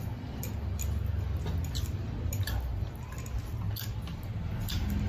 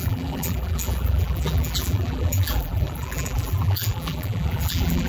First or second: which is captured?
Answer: first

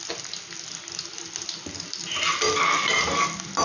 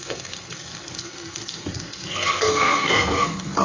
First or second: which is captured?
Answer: first